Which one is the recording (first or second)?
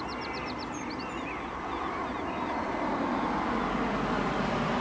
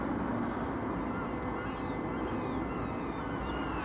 second